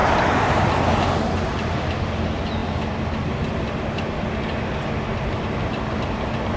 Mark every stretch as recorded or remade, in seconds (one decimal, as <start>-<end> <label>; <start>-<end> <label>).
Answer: 0.0-6.6 recorded